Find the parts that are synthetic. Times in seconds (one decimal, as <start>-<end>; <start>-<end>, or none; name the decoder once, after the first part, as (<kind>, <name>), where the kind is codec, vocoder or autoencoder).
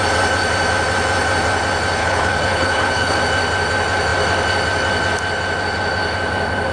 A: 2.0-3.2 (codec, HILCodec)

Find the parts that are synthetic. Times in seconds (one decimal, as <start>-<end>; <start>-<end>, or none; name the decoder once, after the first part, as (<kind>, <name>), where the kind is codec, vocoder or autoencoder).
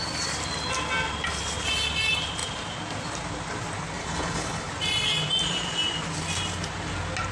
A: 4.0-4.7 (codec, HILCodec)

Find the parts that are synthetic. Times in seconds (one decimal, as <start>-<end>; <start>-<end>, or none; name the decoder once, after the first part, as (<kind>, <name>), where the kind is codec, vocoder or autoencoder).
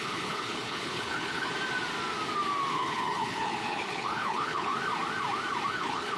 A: 0.0-1.5 (codec, HILCodec); 2.7-4.7; 5.7-6.2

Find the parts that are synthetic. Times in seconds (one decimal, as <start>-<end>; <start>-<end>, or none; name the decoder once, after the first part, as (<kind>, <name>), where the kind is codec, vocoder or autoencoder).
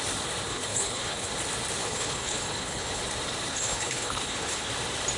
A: 0.5-1.3 (codec, HILCodec); 1.8-3.0; 3.5-4.7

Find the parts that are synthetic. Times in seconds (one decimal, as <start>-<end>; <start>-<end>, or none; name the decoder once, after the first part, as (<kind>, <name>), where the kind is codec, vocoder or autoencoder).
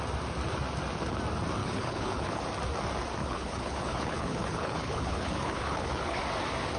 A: 1.6-2.4 (codec, HILCodec); 3.2-6.2